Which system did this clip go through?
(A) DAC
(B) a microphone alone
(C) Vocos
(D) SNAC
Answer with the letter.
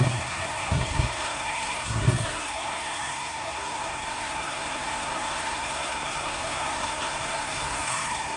D